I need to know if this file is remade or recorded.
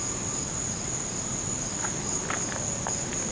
recorded